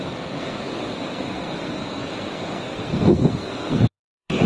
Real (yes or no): no